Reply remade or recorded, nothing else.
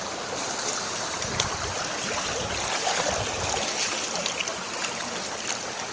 recorded